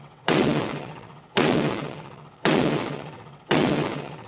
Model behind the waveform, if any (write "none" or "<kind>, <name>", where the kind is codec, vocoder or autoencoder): vocoder, WaveNeXt